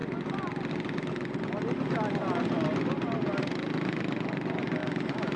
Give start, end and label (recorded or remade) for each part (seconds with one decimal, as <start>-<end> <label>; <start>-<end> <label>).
0.0-5.4 recorded